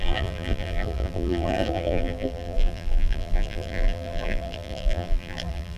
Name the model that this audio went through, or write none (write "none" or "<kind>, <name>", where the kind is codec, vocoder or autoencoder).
vocoder, BigVGAN v2